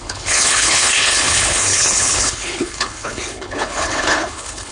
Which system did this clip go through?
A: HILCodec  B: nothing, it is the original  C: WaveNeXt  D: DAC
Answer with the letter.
A